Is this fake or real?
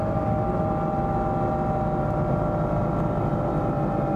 real